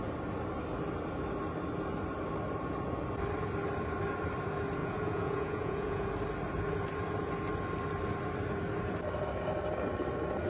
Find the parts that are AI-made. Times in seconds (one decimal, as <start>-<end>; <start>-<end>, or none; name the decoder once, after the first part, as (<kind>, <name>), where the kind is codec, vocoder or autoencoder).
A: 4.8-6.1 (vocoder, Vocos)